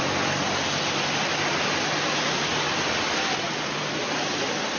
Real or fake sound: real